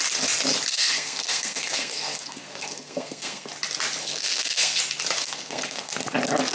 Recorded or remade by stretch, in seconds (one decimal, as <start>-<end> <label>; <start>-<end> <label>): 0.0-0.7 recorded; 0.7-3.5 remade; 3.5-4.0 recorded; 4.0-4.8 remade; 4.8-5.2 recorded; 5.2-5.9 remade; 5.9-6.5 recorded